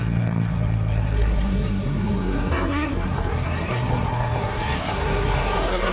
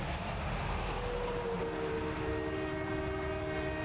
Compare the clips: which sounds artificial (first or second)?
first